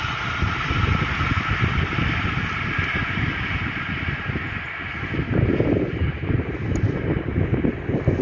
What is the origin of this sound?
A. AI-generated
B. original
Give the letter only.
B